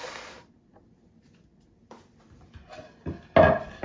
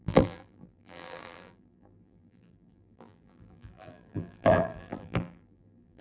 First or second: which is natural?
first